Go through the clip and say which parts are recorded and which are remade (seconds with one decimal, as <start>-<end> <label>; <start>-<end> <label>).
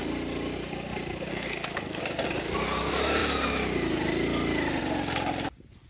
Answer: 0.0-1.3 recorded; 1.3-2.0 remade; 2.0-5.9 recorded